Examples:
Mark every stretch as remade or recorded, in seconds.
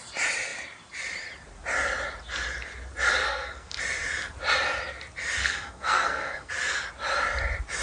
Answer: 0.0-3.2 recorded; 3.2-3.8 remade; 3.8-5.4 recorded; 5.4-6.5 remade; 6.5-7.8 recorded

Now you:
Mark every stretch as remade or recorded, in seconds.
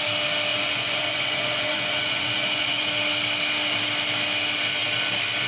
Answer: 0.0-0.5 recorded; 0.5-2.9 remade; 2.9-5.5 recorded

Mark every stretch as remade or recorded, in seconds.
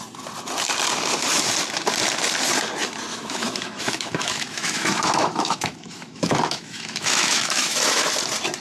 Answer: 0.0-3.1 recorded; 3.1-8.1 remade; 8.1-8.6 recorded